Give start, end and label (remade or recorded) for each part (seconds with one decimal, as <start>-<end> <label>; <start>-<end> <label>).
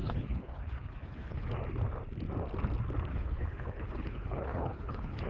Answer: 0.0-1.5 remade; 1.5-3.1 recorded; 3.1-5.3 remade